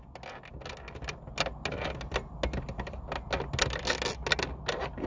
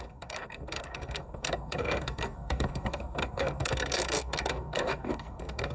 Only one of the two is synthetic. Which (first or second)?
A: second